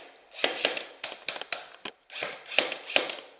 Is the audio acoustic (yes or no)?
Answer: yes